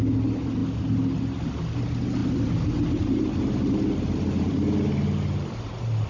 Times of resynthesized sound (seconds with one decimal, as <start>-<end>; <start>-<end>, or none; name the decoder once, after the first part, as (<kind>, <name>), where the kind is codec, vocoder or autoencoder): none